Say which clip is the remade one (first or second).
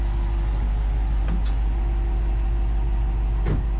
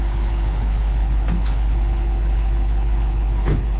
second